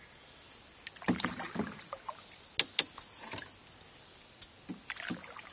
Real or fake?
real